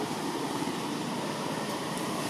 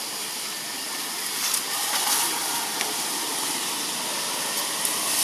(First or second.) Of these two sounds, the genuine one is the second